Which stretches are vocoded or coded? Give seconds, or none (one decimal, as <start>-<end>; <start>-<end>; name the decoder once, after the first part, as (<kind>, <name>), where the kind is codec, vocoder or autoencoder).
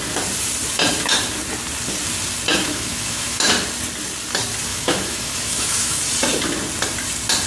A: 2.5-3.5 (autoencoder, DAC-VAE); 4.7-6.0